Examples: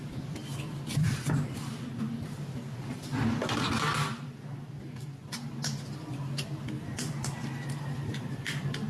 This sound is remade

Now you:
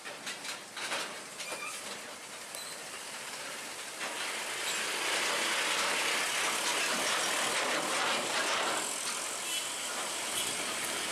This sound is recorded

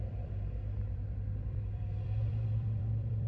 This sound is remade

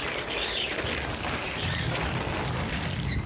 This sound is remade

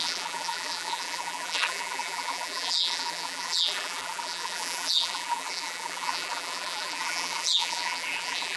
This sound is remade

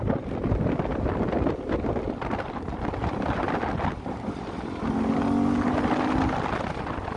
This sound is recorded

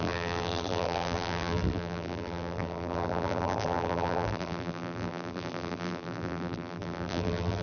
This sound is remade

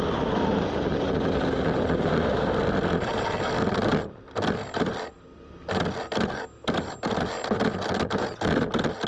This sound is recorded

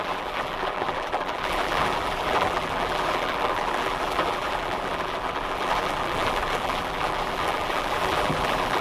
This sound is remade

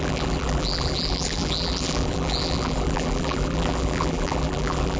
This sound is remade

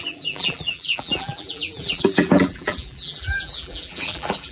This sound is remade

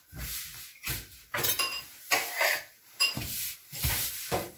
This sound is remade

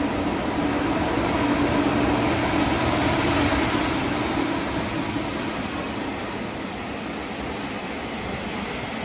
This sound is recorded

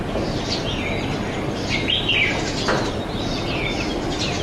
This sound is recorded